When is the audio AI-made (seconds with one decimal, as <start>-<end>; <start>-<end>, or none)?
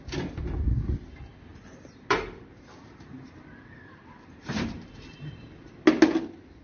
1.5-5.5